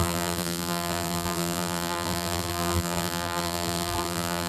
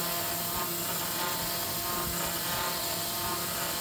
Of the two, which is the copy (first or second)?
first